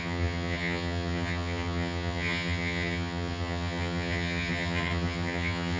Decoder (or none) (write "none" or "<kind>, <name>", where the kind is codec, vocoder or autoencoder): vocoder, HiFi-GAN